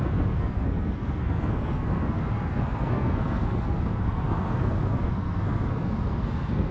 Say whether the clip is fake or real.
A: fake